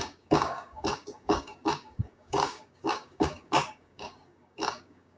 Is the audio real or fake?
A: fake